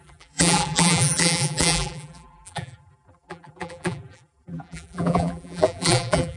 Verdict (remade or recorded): remade